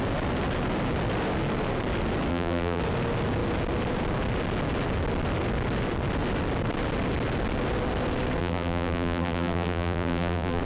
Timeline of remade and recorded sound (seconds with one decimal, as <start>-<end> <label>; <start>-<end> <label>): 0.0-2.3 recorded; 2.3-2.8 remade; 2.8-8.4 recorded; 8.4-10.6 remade